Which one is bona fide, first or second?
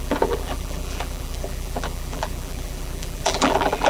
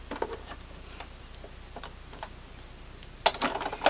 second